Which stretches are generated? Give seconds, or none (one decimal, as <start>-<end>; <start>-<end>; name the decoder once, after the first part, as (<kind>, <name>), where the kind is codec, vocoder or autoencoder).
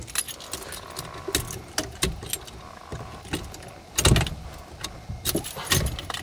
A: none